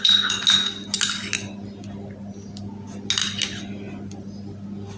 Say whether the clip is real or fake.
real